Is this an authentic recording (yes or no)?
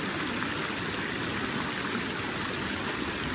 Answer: yes